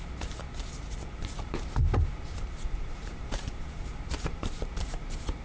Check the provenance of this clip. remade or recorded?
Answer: remade